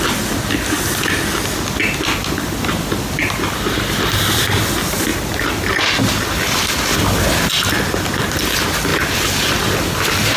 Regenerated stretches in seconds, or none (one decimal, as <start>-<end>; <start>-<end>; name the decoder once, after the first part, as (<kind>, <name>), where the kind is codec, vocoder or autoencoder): none